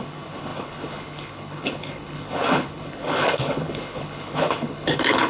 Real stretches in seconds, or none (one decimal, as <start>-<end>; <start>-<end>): none

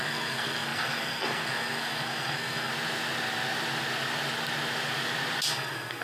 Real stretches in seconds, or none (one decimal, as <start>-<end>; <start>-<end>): 2.7-5.5

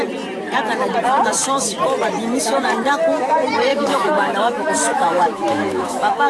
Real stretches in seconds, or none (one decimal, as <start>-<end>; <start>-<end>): 0.0-3.7

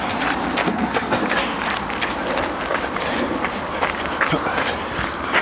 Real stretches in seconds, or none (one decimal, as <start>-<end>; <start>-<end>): 0.0-0.6; 1.2-5.4

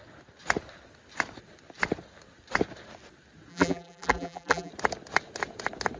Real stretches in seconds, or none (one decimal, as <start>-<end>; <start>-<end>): 0.0-3.5; 4.7-6.0

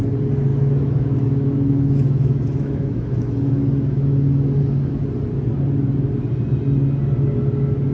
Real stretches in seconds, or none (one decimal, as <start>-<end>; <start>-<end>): 0.0-0.5; 4.6-7.9

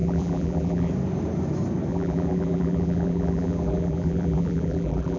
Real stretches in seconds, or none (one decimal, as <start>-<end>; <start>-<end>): 0.9-1.9